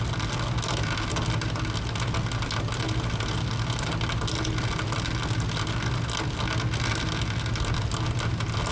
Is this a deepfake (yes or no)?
no